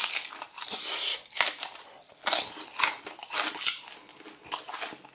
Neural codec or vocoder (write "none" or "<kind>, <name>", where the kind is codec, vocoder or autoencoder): none